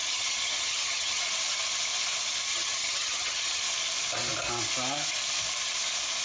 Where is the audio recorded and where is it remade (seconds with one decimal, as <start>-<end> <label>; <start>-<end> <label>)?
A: 0.0-1.2 remade; 1.2-2.5 recorded; 2.5-3.6 remade; 3.6-6.2 recorded